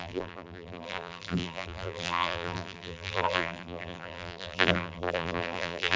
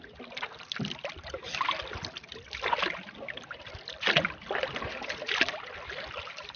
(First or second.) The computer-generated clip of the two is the first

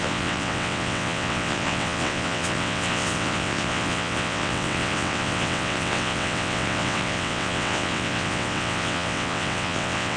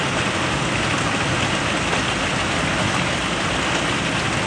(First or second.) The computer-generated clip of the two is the first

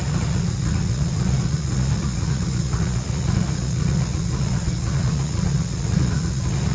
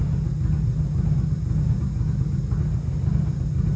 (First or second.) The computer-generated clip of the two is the first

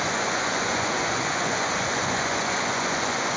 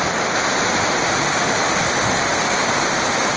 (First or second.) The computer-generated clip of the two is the first